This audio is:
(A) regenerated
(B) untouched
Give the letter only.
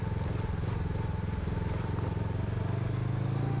B